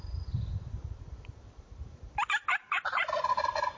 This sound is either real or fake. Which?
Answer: real